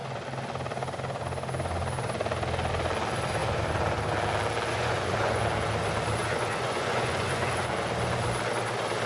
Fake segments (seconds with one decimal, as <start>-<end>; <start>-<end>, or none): 4.7-5.4; 6.2-7.7